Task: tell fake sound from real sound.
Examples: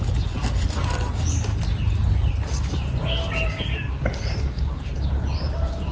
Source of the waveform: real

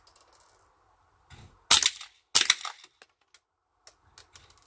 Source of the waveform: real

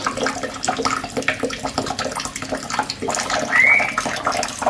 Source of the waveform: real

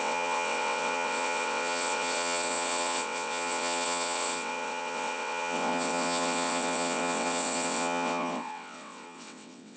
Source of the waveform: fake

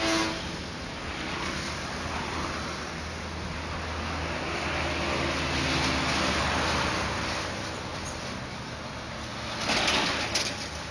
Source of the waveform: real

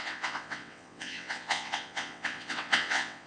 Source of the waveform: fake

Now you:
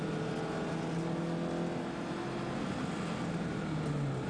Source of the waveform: real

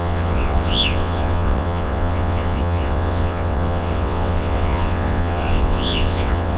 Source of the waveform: fake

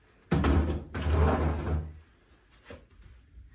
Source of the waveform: real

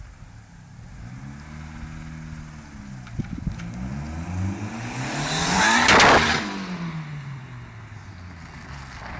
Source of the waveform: real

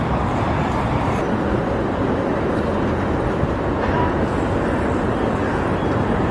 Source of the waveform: real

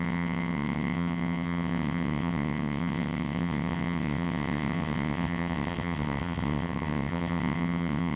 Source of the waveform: fake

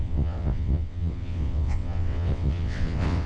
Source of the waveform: fake